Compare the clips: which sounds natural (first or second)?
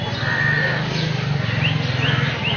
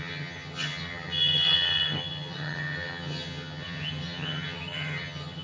first